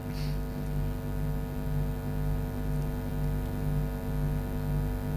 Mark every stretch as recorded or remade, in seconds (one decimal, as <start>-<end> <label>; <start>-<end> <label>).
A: 0.0-5.2 recorded